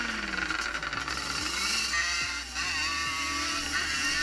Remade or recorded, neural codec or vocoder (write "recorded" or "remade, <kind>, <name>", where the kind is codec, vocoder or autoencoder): recorded